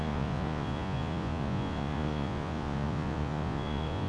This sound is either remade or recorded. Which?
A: remade